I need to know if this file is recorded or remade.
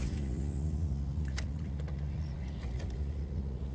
remade